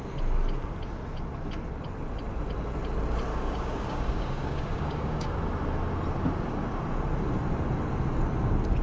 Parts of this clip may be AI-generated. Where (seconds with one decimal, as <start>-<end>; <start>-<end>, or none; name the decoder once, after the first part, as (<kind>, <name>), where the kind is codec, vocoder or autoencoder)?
3.3-5.4 (codec, DAC)